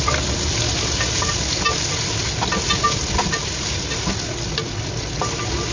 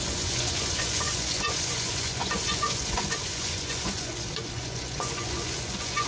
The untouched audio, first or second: first